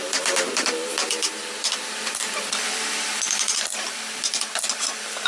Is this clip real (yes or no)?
no